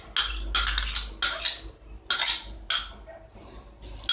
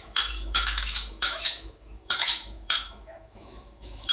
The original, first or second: first